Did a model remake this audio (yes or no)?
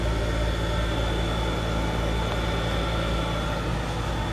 no